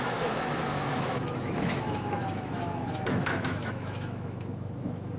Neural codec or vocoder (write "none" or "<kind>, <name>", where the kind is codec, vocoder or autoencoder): autoencoder, DAC-VAE